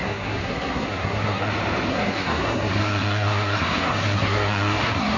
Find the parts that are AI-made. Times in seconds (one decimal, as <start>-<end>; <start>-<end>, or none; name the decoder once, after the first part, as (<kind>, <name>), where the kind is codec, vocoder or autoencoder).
0.0-1.5 (codec, SNAC); 1.9-5.2